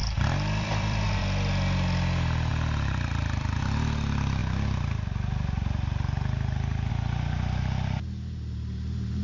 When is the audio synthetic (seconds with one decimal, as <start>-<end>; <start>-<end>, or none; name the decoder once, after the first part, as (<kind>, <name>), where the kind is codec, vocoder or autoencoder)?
0.0-1.2 (vocoder, BigVGAN v2); 2.5-3.6